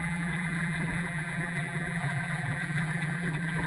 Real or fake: fake